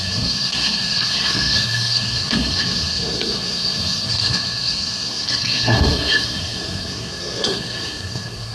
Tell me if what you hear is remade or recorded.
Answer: remade